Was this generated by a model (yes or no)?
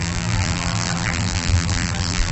yes